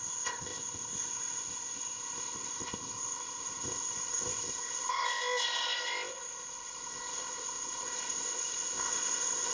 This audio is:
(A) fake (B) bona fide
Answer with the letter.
A